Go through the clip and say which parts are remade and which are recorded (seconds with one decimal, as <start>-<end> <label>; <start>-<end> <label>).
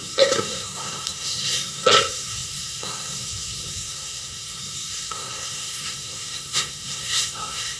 0.0-7.8 remade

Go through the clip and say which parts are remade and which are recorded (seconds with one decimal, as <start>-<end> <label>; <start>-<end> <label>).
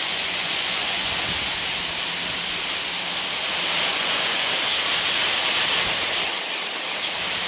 0.0-1.1 remade; 1.1-3.9 recorded; 3.9-4.5 remade; 4.5-7.5 recorded